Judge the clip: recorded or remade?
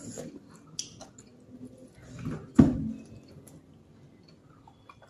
recorded